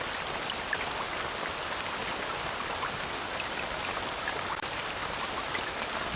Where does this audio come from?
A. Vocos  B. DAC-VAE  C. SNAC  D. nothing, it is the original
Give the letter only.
D